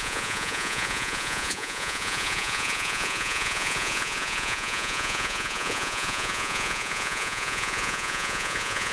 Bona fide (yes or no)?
no